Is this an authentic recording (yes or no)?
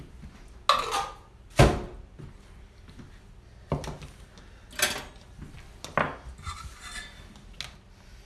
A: yes